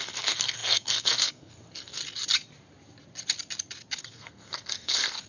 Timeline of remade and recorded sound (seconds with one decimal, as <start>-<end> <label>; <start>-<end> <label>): 0.0-2.0 remade; 2.0-4.0 recorded; 4.0-5.3 remade